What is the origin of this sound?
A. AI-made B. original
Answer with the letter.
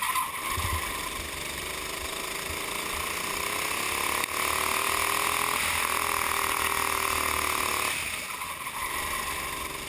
B